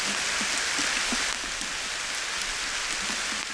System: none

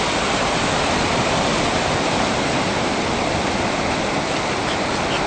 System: none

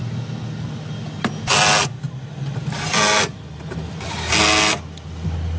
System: none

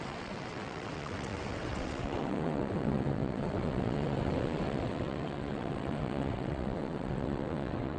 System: vocoder, WaveNeXt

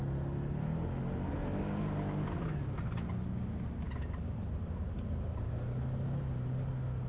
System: none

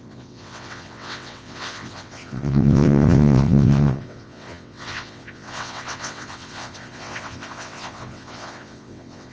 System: vocoder, WaveNeXt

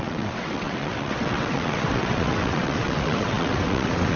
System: vocoder, WaveNeXt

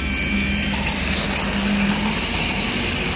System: none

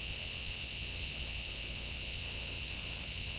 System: vocoder, WaveNeXt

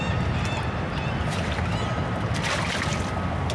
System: none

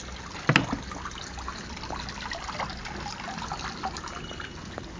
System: none